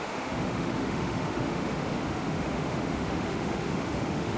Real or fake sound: fake